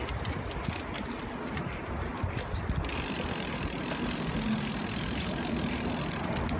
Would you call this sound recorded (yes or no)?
yes